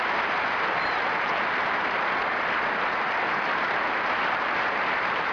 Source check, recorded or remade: recorded